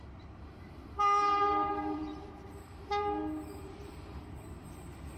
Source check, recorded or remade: remade